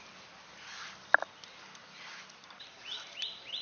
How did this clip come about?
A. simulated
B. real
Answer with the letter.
B